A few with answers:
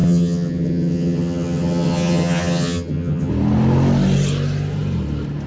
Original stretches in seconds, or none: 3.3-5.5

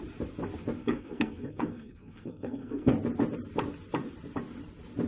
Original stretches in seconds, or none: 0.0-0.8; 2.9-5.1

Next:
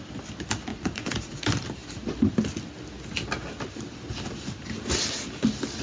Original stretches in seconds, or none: 0.0-0.7; 1.4-5.8

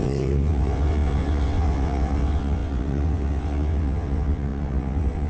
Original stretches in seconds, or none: none

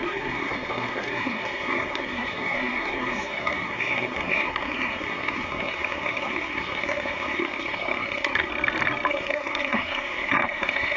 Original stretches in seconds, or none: 8.5-9.1

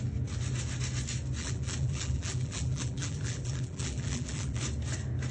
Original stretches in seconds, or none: 0.0-1.4; 4.6-5.3